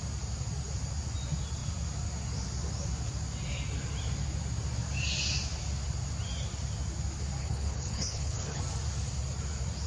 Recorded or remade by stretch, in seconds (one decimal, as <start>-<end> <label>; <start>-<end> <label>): 0.0-7.4 recorded; 7.4-8.6 remade; 8.6-9.9 recorded